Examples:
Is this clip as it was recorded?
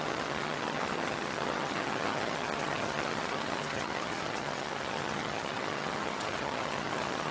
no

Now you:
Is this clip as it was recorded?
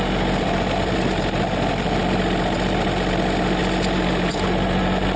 yes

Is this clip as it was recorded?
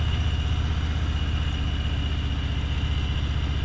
yes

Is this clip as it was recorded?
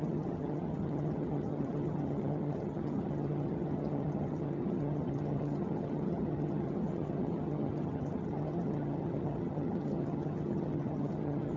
no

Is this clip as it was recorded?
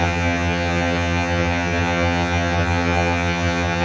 no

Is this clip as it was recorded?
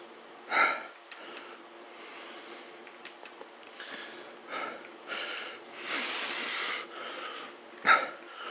yes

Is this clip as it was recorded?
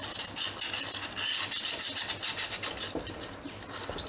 yes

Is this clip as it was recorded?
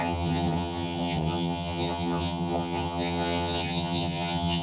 no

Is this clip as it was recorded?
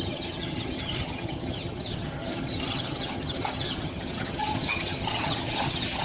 no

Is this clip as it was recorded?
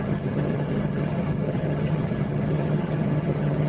no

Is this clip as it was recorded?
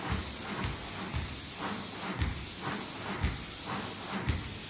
yes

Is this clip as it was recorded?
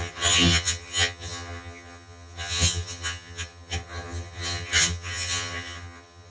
no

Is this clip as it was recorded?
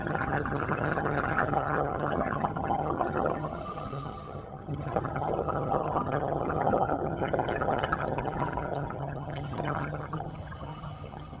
no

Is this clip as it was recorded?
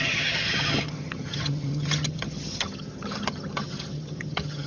no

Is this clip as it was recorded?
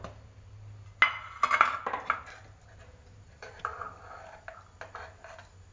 yes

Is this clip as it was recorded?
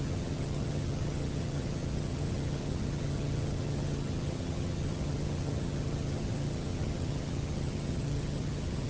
no